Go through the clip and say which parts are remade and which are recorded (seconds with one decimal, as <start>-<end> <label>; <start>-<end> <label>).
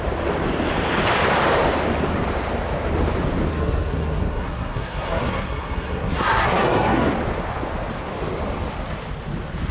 0.0-3.5 recorded; 3.5-7.1 remade; 7.1-9.7 recorded